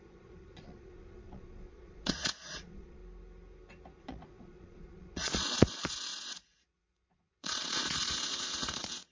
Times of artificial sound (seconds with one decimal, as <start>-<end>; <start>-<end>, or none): 0.0-3.0; 4.0-9.1